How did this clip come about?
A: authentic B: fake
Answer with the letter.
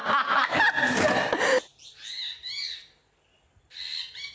A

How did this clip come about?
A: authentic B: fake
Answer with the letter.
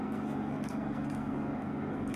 B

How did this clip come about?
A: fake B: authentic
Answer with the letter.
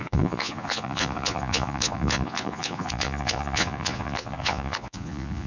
A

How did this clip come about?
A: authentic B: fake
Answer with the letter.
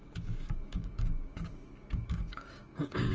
B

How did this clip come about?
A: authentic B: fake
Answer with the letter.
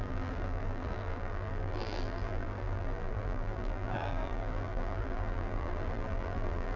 B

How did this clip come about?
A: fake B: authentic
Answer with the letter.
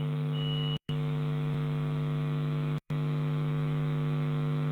A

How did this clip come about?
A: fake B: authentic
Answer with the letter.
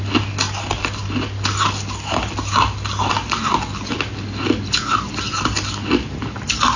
B